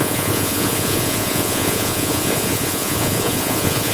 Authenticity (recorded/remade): remade